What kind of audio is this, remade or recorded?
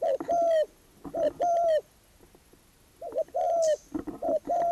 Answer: recorded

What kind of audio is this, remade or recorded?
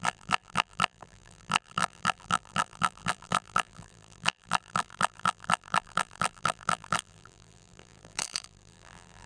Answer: remade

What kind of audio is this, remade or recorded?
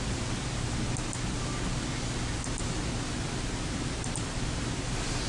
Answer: recorded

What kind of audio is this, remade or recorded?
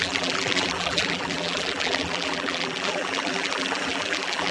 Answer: remade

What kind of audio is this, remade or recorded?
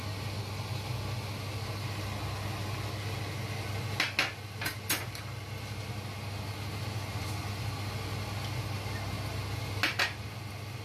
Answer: recorded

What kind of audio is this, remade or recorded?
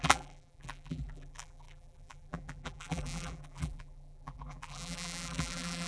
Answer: remade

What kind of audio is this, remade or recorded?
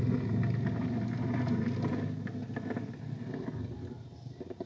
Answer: recorded